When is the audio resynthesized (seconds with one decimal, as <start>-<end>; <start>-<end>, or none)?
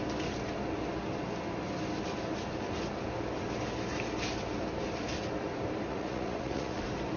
5.9-6.8